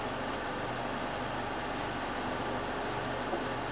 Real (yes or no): yes